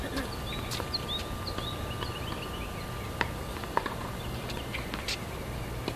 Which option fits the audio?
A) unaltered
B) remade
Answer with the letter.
A